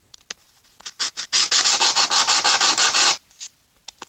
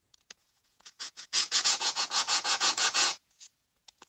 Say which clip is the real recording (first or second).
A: first